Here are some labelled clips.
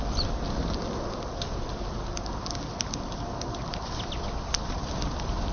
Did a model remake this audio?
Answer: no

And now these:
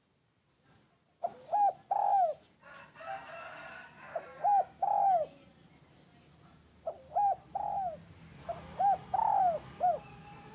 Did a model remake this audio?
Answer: no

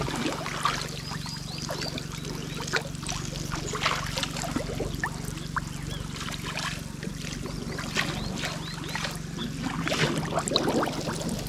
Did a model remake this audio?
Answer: no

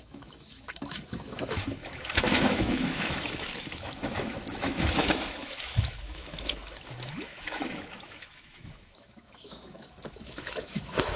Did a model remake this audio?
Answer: yes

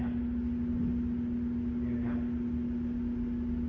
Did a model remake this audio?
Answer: no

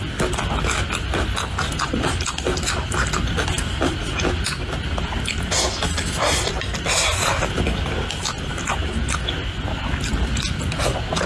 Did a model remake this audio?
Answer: no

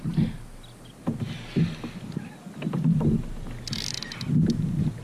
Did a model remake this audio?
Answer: no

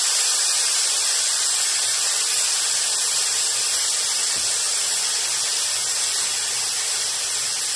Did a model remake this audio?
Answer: no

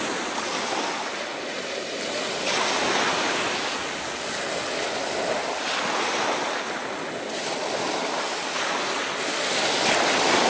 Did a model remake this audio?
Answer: no